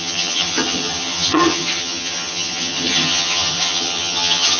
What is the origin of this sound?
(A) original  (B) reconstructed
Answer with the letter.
B